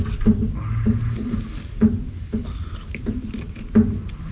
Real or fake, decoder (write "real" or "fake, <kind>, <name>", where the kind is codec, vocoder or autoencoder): real